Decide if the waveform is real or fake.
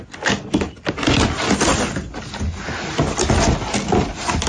real